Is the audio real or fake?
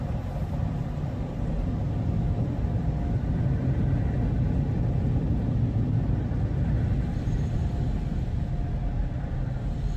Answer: real